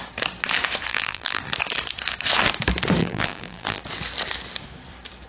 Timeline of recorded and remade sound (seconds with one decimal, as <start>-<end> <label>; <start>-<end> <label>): 0.0-0.9 recorded; 0.9-1.4 remade; 1.4-3.0 recorded; 3.0-3.8 remade; 3.8-5.3 recorded